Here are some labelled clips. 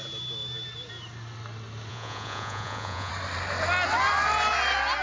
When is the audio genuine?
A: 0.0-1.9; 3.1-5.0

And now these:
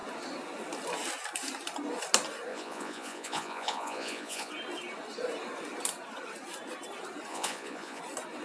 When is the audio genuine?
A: 0.0-2.5; 4.5-7.3; 8.0-8.4

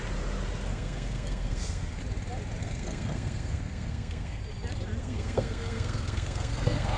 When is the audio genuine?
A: 0.0-0.7; 2.0-2.6; 4.4-5.0

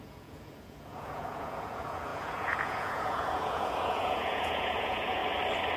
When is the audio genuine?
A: 5.2-5.8

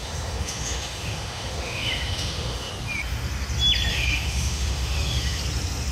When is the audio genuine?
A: 2.7-3.9; 5.4-5.9

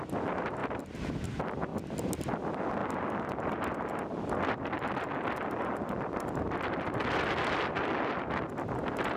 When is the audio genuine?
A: 0.0-1.7; 2.3-2.8; 8.0-9.2

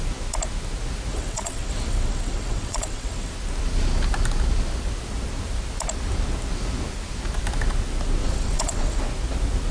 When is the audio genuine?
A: 0.0-1.1; 3.3-8.2; 9.0-9.7

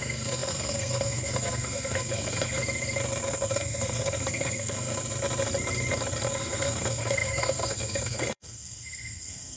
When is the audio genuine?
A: 2.6-3.5; 4.9-6.3